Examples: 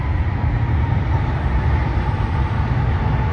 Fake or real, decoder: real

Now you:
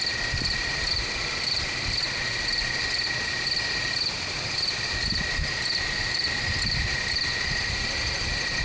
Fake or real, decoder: real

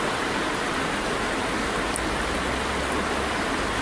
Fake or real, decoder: real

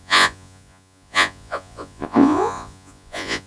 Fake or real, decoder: fake, vocoder, Vocos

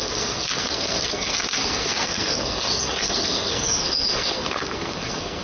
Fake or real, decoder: fake, codec, SNAC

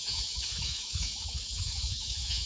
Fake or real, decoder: fake, autoencoder, DAC-VAE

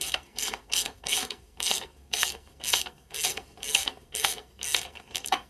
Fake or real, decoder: fake, codec, SNAC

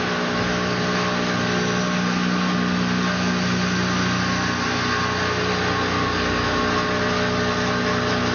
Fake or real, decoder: real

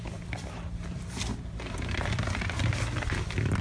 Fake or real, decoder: fake, vocoder, BigVGAN v2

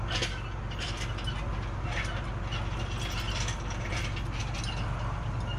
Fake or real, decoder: real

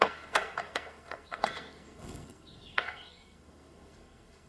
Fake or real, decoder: fake, codec, SNAC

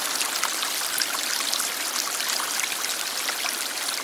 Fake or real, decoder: real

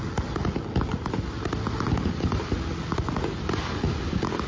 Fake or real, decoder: real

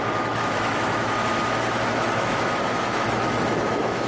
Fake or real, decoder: fake, autoencoder, DAC-VAE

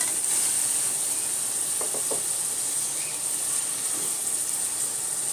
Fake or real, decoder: real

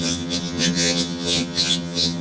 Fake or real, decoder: fake, vocoder, HiFi-GAN